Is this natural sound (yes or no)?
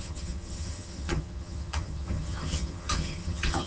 no